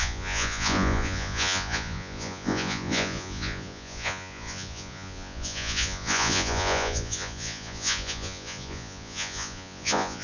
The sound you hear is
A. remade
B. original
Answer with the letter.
A